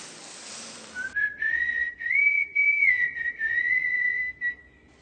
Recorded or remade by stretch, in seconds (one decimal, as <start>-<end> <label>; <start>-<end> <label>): 0.0-1.2 recorded; 1.2-4.2 remade; 4.2-5.0 recorded